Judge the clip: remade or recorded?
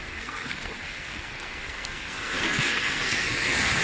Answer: remade